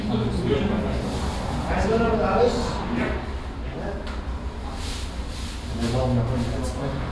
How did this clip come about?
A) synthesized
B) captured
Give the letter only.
B